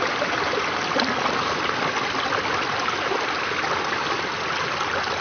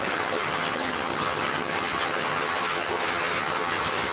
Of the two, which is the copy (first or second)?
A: second